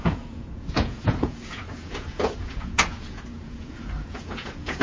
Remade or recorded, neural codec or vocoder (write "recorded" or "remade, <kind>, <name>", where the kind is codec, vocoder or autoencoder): remade, vocoder, Vocos